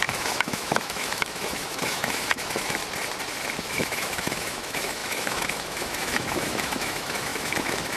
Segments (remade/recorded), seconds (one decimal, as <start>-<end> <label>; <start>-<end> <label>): 0.0-2.8 remade; 2.8-3.6 recorded; 3.6-8.0 remade